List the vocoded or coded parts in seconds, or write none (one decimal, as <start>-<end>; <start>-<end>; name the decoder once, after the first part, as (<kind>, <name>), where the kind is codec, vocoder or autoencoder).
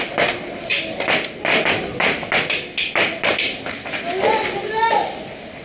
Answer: none